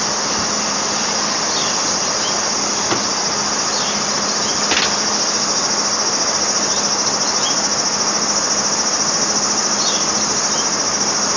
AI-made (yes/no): no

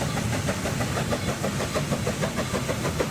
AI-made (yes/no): no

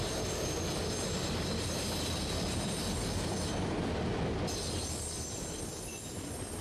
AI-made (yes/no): no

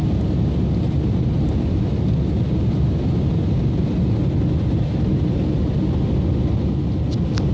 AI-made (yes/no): no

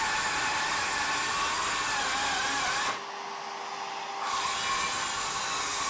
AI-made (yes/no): no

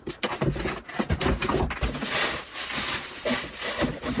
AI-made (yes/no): no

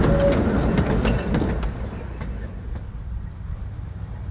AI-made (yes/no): no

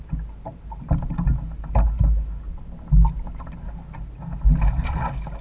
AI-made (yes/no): no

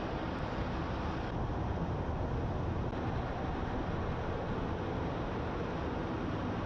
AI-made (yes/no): no